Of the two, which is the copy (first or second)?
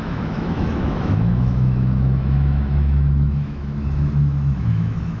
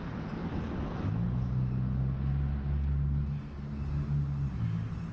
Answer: first